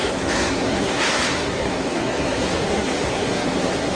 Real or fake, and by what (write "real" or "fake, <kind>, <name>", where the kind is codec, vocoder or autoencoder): fake, codec, SNAC